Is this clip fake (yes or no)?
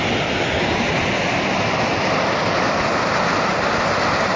no